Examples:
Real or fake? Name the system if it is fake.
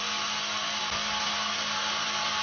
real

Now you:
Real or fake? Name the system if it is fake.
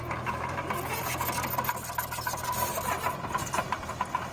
real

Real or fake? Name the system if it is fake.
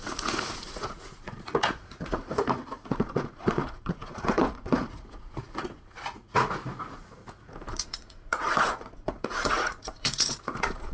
fake, vocoder, Vocos